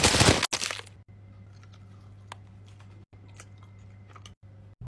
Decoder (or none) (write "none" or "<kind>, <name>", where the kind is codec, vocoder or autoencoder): none